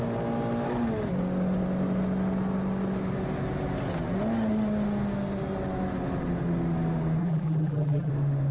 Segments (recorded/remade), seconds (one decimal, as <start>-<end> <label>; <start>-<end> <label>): 0.0-7.2 recorded; 7.2-8.1 remade; 8.1-8.5 recorded